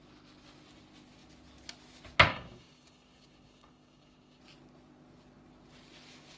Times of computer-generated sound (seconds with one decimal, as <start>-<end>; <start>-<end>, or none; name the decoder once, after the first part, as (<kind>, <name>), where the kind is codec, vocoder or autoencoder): 2.3-4.4 (codec, DAC)